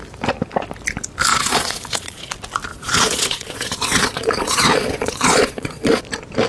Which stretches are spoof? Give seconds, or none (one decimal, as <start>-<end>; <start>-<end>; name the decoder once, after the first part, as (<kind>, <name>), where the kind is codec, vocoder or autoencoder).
1.3-2.3 (vocoder, Vocos); 2.7-6.0